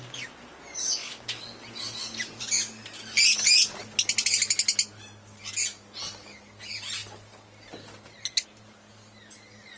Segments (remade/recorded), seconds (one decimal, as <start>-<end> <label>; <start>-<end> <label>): 0.0-9.8 recorded